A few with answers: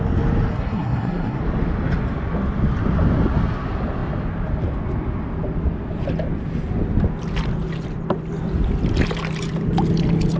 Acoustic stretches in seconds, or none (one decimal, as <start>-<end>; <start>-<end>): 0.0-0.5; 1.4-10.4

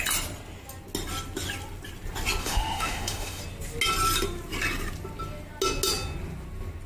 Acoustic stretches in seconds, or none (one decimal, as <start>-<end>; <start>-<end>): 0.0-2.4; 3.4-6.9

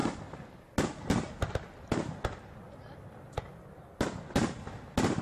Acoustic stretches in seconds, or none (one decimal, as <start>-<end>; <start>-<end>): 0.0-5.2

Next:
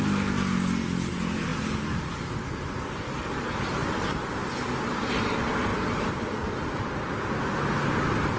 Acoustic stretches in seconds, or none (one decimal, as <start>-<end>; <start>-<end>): 0.0-8.4